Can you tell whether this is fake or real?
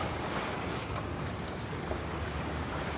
fake